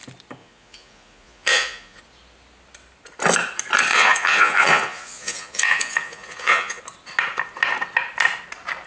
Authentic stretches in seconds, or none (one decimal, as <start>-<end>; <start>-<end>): 0.0-0.4; 2.0-3.9; 6.8-8.9